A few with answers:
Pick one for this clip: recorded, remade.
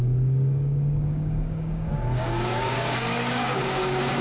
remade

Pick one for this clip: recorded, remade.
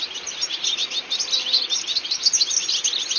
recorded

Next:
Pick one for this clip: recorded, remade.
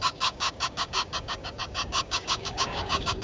remade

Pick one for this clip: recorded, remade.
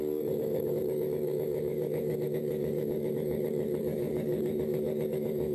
remade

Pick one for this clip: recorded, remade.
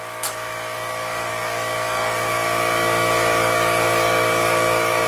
remade